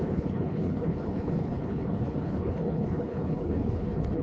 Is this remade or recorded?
remade